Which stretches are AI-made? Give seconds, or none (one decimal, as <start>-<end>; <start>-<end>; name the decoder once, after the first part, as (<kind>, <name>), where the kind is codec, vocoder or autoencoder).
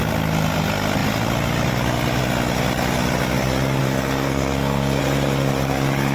3.8-5.0 (codec, SNAC)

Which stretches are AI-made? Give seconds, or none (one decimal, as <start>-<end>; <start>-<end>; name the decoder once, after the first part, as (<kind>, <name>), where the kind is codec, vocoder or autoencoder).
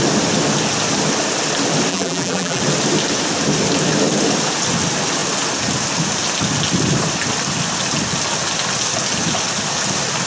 1.9-2.6 (vocoder, BigVGAN v2)